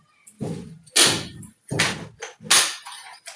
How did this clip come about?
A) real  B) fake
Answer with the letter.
A